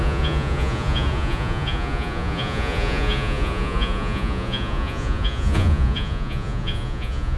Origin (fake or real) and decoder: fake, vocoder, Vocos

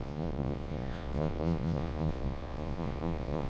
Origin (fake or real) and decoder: fake, vocoder, Vocos